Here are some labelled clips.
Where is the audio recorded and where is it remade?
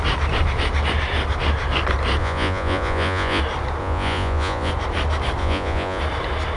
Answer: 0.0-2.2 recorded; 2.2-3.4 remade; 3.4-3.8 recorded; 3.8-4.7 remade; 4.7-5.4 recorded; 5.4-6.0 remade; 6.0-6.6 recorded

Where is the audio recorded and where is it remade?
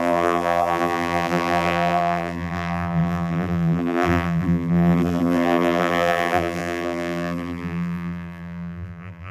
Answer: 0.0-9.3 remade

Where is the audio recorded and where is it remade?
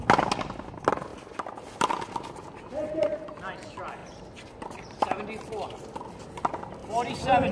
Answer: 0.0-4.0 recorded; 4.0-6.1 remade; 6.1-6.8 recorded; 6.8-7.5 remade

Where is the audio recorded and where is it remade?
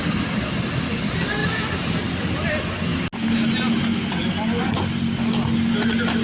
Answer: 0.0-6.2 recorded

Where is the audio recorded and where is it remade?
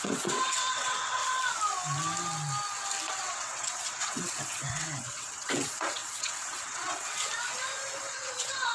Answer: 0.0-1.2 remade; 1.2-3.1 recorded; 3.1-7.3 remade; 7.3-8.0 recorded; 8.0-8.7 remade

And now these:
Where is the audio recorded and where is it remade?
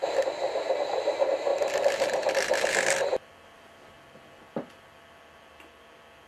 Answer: 0.0-6.3 recorded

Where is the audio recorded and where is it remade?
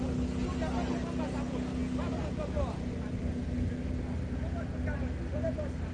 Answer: 0.0-5.9 recorded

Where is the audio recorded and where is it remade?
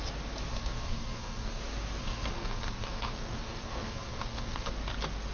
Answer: 0.0-0.5 recorded; 0.5-1.6 remade; 1.6-2.0 recorded; 2.0-4.7 remade; 4.7-5.3 recorded